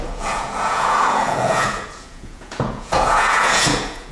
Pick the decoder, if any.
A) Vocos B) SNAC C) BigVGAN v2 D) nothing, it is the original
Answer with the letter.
A